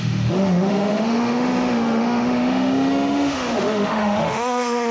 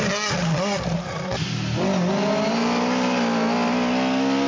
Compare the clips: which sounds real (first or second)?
second